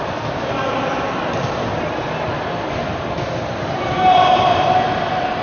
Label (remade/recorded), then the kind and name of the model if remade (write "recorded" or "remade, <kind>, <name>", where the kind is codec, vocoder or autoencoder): recorded